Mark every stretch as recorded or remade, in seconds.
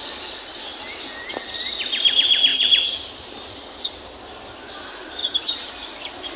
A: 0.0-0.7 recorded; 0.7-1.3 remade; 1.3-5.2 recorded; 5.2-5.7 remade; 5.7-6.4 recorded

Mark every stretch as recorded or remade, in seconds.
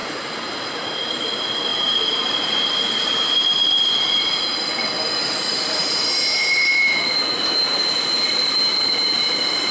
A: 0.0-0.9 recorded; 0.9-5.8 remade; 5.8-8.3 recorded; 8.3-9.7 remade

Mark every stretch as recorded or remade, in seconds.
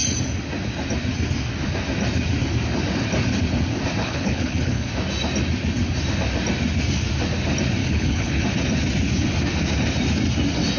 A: 0.0-4.0 recorded; 4.0-4.9 remade; 4.9-7.8 recorded; 7.8-8.4 remade; 8.4-10.8 recorded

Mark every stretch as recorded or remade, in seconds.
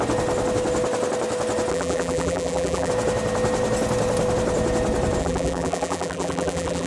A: 0.0-1.7 recorded; 1.7-2.9 remade; 2.9-5.2 recorded; 5.2-6.9 remade